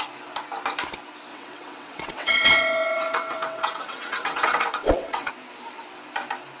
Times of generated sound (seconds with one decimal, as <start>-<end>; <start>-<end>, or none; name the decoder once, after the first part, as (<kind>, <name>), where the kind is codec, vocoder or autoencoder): 1.3-5.3 (vocoder, WaveNeXt)